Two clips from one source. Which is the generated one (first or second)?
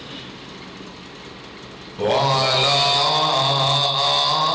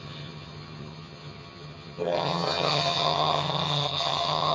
second